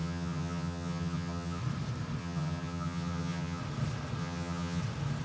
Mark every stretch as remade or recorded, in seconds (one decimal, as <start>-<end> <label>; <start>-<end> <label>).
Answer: 0.0-1.6 remade; 1.6-2.2 recorded; 2.2-3.6 remade; 3.6-4.2 recorded; 4.2-4.8 remade; 4.8-5.2 recorded

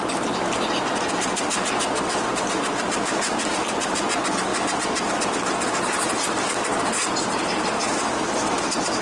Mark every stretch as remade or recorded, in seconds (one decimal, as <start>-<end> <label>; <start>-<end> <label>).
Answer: 0.0-9.0 recorded

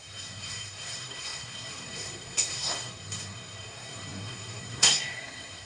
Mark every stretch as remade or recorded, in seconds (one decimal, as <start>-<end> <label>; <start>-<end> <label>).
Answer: 0.0-5.7 remade